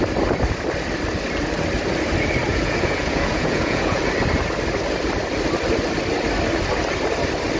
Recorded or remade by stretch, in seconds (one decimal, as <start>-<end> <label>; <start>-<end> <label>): 0.0-2.5 recorded; 2.5-4.0 remade; 4.0-7.6 recorded

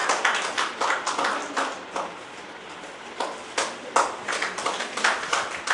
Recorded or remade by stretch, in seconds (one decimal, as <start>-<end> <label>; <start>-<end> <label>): 0.0-5.7 recorded

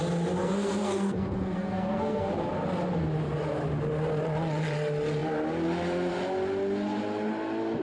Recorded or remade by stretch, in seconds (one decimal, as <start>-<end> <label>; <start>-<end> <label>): 0.0-0.4 recorded; 0.4-2.3 remade; 2.3-7.8 recorded

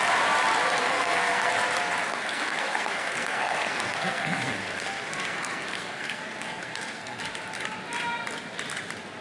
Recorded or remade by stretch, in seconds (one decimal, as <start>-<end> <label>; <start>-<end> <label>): 0.0-0.8 recorded; 0.8-1.5 remade; 1.5-2.1 recorded; 2.1-7.2 remade; 7.2-9.2 recorded

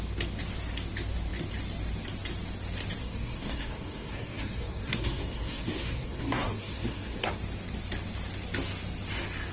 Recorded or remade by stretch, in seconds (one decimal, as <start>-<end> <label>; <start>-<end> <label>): 0.0-3.0 recorded; 3.0-7.3 remade; 7.3-9.5 recorded

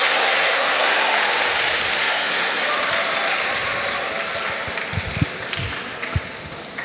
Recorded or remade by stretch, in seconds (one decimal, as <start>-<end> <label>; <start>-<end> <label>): 0.0-1.2 remade; 1.2-2.0 recorded; 2.0-2.6 remade; 2.6-6.8 recorded

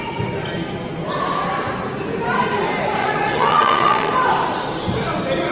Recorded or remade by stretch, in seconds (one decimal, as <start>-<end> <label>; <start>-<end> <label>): 0.0-3.0 recorded; 3.0-4.1 remade; 4.1-5.5 recorded

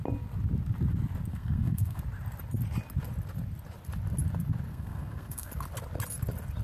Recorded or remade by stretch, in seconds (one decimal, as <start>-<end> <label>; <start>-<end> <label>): 0.0-1.3 recorded; 1.3-2.0 remade; 2.0-4.7 recorded; 4.7-5.5 remade; 5.5-6.6 recorded